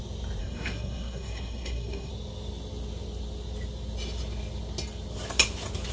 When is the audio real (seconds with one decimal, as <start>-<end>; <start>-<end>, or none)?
0.0-0.4; 2.1-5.9